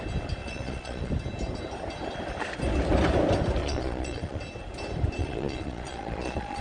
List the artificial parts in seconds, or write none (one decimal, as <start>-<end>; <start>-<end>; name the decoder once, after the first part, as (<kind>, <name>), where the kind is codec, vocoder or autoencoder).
0.4-1.1 (vocoder, Vocos); 3.6-4.4; 5.2-6.6

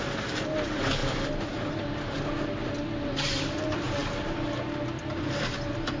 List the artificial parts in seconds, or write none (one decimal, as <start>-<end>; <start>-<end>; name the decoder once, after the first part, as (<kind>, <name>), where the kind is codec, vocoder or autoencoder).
none

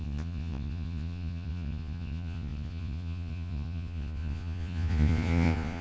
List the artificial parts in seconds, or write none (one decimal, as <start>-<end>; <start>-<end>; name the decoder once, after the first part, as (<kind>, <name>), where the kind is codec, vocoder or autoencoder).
0.0-5.8 (vocoder, Vocos)